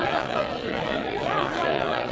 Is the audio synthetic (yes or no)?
yes